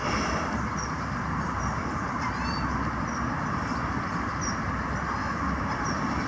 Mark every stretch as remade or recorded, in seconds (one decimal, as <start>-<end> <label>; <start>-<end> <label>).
0.0-5.2 recorded; 5.2-5.7 remade; 5.7-6.3 recorded

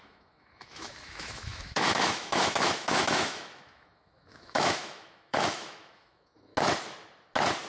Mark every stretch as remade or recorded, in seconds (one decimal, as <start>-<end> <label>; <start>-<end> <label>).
0.0-6.5 remade; 6.5-7.7 recorded

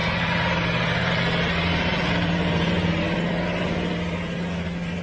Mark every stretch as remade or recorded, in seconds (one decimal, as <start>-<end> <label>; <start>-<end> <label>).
0.0-5.0 recorded

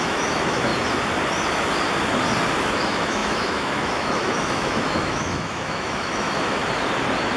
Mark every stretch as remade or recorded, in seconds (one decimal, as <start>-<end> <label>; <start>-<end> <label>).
0.0-0.7 remade; 0.7-2.6 recorded; 2.6-6.6 remade; 6.6-7.4 recorded

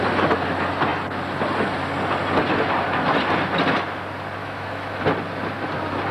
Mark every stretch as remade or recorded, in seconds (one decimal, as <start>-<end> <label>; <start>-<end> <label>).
0.0-4.4 recorded; 4.4-5.0 remade; 5.0-6.1 recorded

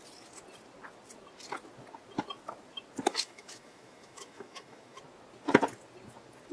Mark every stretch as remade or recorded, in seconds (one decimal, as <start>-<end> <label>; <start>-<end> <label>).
0.0-3.1 recorded; 3.1-5.0 remade; 5.0-6.5 recorded